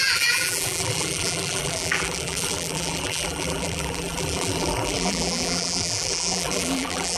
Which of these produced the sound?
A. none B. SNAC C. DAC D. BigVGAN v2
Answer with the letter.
D